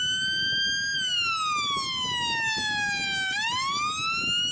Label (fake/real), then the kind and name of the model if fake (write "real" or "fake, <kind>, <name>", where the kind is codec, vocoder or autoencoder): real